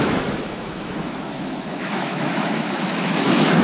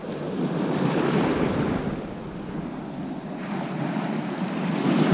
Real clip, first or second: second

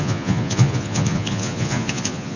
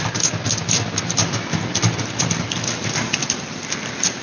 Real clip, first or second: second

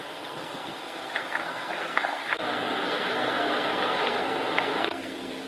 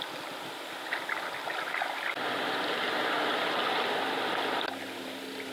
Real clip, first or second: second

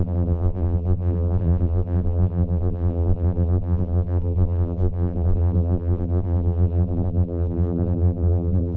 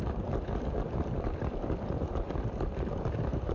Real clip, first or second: second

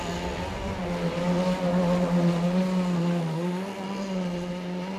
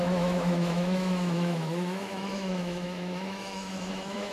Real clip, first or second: first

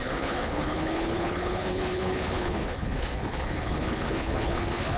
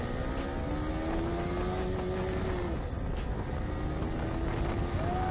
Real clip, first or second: second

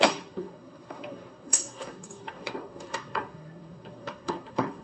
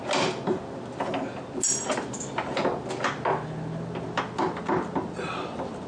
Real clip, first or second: second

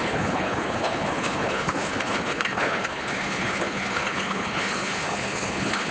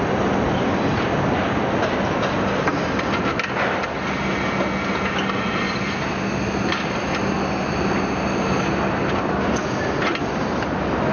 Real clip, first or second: second